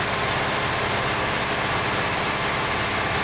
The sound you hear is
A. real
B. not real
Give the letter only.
A